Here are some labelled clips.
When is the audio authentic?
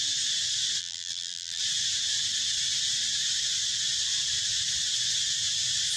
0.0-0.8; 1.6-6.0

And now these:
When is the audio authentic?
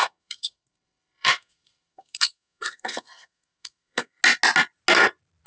4.2-5.5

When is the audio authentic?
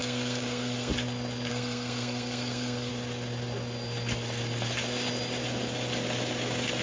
0.9-1.5; 2.9-6.8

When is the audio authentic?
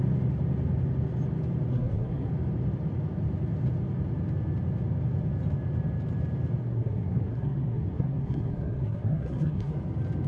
0.0-1.7; 2.3-6.6; 9.7-10.3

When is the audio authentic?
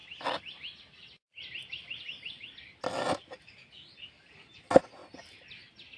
0.0-6.0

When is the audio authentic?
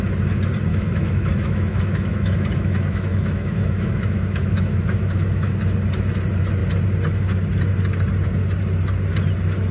0.0-0.7; 5.5-9.7